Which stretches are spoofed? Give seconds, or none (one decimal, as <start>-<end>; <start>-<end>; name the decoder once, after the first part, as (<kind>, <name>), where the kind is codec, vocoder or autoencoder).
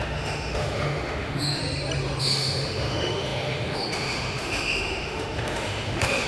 0.0-1.6 (autoencoder, DAC-VAE); 2.2-6.3